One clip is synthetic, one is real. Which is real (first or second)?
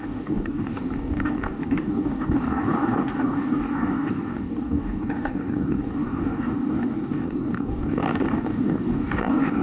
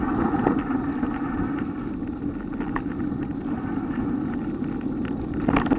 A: second